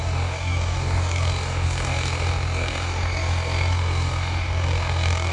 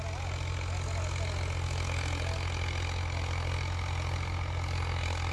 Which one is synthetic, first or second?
first